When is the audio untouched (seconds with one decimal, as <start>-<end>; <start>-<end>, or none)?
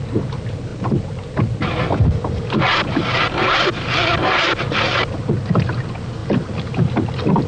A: 0.0-7.5